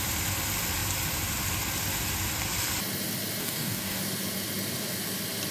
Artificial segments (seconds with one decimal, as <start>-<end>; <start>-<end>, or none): 3.4-4.0